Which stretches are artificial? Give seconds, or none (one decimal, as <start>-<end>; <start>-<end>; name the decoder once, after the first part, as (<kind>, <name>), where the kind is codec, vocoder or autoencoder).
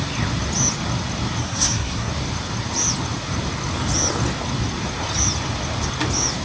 1.4-2.1 (codec, SNAC)